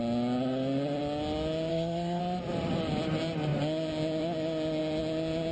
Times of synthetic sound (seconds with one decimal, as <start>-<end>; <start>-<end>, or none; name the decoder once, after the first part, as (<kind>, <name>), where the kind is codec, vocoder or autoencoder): 1.7-2.2 (codec, SNAC)